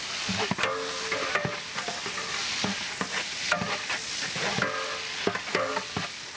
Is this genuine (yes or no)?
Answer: yes